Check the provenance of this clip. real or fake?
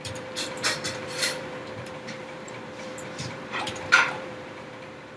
fake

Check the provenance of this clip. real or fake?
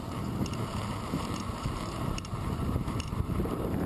fake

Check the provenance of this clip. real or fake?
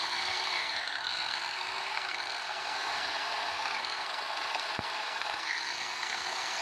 fake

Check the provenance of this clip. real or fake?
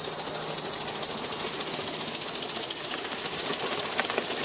real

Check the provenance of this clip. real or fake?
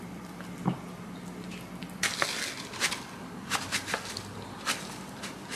real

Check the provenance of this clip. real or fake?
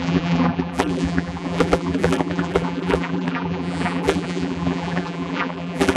fake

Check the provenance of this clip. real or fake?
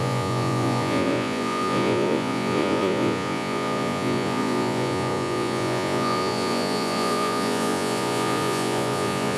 fake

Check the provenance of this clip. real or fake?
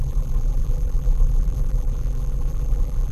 fake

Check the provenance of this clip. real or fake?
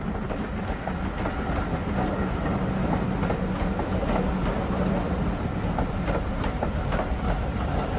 real